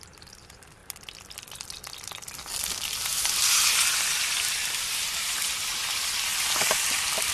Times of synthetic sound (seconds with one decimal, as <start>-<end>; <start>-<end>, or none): 0.0-0.8; 5.2-7.3